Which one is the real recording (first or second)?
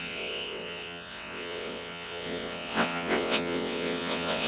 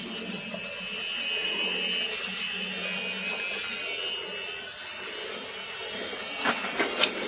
second